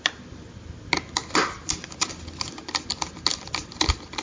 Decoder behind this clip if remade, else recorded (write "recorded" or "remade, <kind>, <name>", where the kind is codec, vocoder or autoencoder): recorded